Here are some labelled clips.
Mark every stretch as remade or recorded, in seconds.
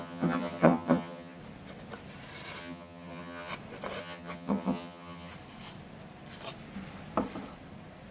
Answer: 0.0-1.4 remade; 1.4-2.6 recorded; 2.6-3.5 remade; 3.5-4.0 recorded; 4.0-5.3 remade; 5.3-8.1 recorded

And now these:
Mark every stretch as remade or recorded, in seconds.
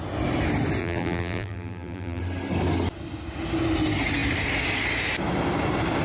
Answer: 0.0-0.8 recorded; 0.8-2.2 remade; 2.2-6.0 recorded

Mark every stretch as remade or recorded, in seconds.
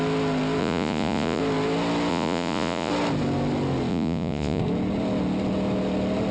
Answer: 0.0-0.6 recorded; 0.6-1.4 remade; 1.4-2.1 recorded; 2.1-2.9 remade; 2.9-3.9 recorded; 3.9-4.6 remade; 4.6-6.3 recorded